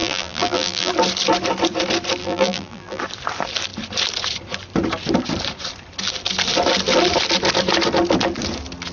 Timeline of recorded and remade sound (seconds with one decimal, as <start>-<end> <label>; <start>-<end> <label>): 0.0-0.9 remade; 0.9-2.2 recorded; 2.2-3.0 remade; 3.0-8.9 recorded